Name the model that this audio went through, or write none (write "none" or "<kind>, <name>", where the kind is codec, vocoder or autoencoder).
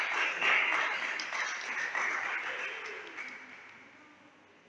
none